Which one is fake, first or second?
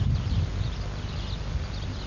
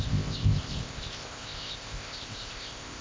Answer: second